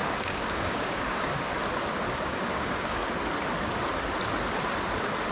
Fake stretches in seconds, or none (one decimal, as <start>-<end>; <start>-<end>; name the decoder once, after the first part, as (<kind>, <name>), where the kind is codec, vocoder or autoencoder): 0.0-1.5 (codec, DAC); 2.1-3.0